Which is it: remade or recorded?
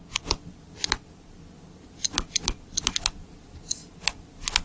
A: recorded